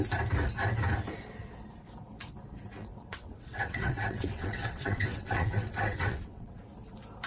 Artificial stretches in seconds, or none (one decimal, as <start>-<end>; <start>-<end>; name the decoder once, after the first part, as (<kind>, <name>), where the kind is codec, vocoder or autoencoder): 2.8-6.6 (vocoder, WaveNeXt)